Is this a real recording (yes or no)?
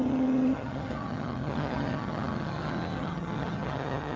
no